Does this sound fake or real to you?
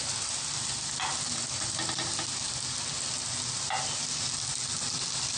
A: real